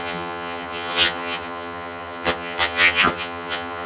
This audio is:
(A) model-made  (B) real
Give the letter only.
A